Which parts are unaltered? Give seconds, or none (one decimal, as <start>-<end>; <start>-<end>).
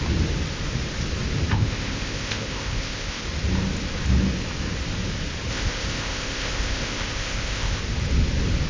0.0-1.5; 3.2-5.5; 7.8-8.7